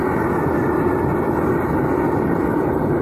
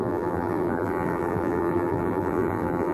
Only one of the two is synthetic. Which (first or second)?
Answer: second